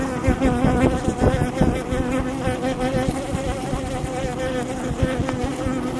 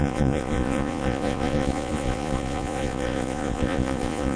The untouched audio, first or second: first